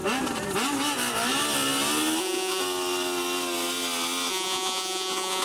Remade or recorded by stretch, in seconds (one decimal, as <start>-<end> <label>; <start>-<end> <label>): 0.0-2.2 recorded; 2.2-2.6 remade; 2.6-4.3 recorded; 4.3-5.4 remade